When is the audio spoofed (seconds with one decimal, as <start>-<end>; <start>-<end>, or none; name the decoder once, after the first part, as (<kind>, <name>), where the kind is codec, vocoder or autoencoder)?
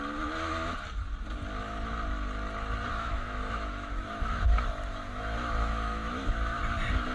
2.9-6.6 (autoencoder, DAC-VAE)